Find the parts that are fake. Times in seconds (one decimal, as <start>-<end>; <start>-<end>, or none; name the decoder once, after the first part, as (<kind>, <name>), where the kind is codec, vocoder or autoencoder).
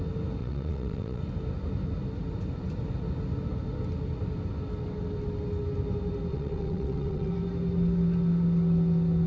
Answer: 0.4-1.2 (vocoder, WaveNeXt); 6.3-7.3